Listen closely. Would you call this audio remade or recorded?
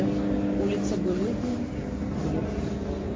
recorded